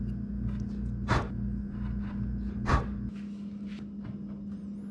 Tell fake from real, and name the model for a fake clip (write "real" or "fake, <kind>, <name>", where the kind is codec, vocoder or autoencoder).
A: real